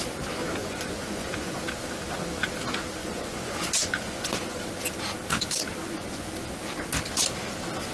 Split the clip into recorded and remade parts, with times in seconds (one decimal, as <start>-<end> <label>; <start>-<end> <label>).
0.0-0.6 recorded; 0.6-1.6 remade; 1.6-3.0 recorded; 3.0-4.6 remade; 4.6-5.8 recorded; 5.8-6.3 remade; 6.3-7.9 recorded